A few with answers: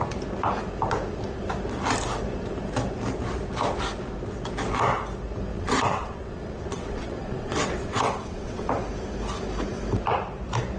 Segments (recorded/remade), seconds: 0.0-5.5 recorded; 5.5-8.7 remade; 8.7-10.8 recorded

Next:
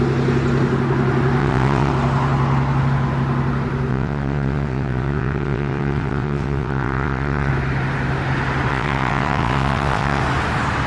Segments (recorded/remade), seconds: 0.0-1.4 recorded; 1.4-1.9 remade; 1.9-3.9 recorded; 3.9-7.5 remade; 7.5-8.7 recorded; 8.7-10.2 remade; 10.2-10.9 recorded

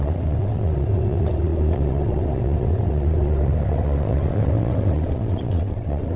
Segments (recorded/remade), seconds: 0.0-6.2 remade

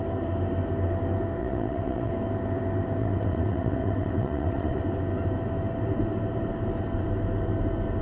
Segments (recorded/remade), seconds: 0.0-1.4 recorded; 1.4-2.1 remade; 2.1-3.0 recorded; 3.0-4.8 remade; 4.8-8.0 recorded

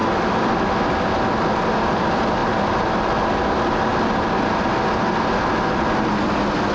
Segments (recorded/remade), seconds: 0.0-6.7 recorded

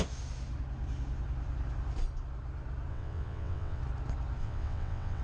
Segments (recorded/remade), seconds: 0.0-2.9 recorded; 2.9-3.8 remade; 3.8-4.4 recorded; 4.4-5.2 remade

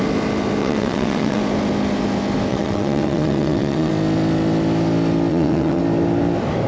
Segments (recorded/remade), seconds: 0.0-0.6 recorded; 0.6-1.4 remade; 1.4-2.5 recorded; 2.5-3.9 remade; 3.9-5.3 recorded; 5.3-5.8 remade; 5.8-6.7 recorded

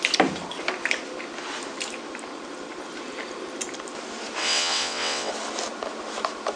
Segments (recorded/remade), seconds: 0.0-4.4 recorded; 4.4-5.3 remade; 5.3-6.6 recorded